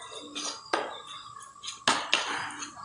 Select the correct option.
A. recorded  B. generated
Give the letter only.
A